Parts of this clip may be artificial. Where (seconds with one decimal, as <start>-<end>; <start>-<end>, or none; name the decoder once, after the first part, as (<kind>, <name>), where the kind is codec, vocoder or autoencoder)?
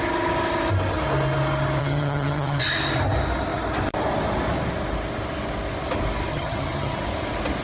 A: 1.8-2.6 (vocoder, HiFi-GAN); 6.3-7.0